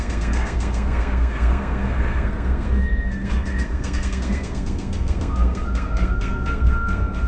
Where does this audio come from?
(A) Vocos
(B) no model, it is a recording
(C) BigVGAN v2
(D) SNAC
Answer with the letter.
D